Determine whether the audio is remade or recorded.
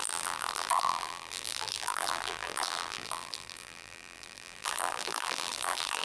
remade